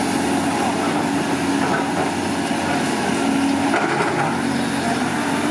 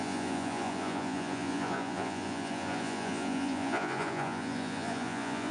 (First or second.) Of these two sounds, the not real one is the second